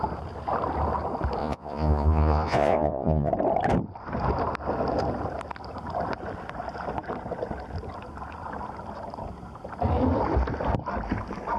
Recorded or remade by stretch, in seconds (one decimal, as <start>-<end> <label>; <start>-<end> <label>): 0.0-1.4 recorded; 1.4-3.3 remade; 3.3-11.6 recorded